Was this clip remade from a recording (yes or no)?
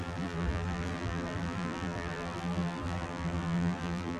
yes